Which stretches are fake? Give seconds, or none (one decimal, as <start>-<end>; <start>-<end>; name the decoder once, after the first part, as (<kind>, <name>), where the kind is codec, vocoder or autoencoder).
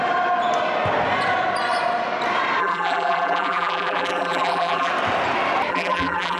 2.6-4.9 (vocoder, BigVGAN v2); 5.7-6.4